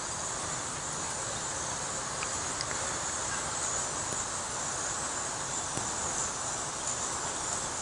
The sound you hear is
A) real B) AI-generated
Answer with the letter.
A